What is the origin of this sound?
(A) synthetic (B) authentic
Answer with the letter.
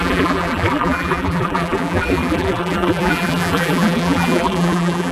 A